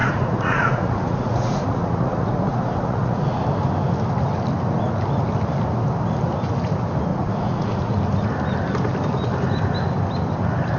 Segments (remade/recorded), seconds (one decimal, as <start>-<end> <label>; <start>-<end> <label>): 0.0-3.4 remade; 3.4-7.1 recorded; 7.1-7.9 remade; 7.9-10.8 recorded